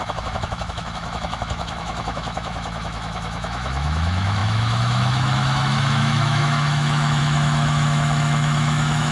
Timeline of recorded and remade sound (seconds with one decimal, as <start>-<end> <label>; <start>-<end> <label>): 0.0-9.1 remade

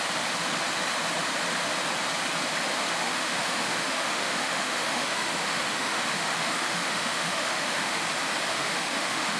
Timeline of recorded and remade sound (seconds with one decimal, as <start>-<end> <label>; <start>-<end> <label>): 0.0-3.0 recorded; 3.0-8.0 remade; 8.0-8.5 recorded; 8.5-9.4 remade

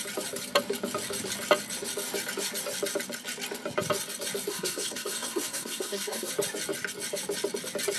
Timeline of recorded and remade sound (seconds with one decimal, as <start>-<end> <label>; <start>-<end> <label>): 0.0-4.5 recorded; 4.5-6.3 remade; 6.3-8.0 recorded

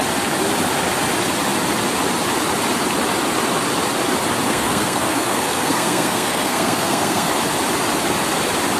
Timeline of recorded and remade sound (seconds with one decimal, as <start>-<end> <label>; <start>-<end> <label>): 0.0-4.5 recorded; 4.5-7.3 remade; 7.3-8.8 recorded

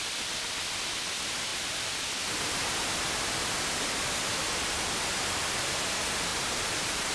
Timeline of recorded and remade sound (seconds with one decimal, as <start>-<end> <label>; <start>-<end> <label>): 0.0-6.3 recorded; 6.3-7.1 remade

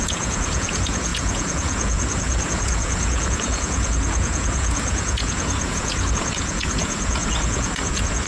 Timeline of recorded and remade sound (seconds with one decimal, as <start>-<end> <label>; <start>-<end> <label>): 0.0-8.3 remade

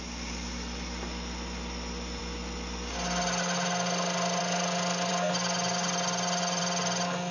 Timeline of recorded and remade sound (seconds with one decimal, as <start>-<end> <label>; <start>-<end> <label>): 0.0-7.3 recorded

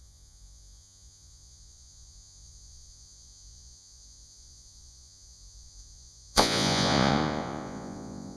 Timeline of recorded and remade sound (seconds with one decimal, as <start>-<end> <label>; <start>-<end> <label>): 0.0-8.4 remade